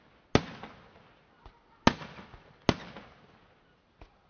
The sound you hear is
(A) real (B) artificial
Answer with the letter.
A